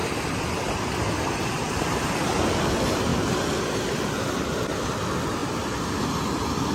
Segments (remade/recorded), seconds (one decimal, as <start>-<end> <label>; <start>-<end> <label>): 0.0-6.7 recorded